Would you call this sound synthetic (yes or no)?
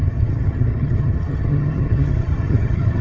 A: yes